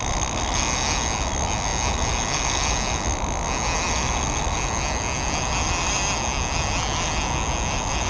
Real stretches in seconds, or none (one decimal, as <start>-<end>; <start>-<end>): 0.0-8.1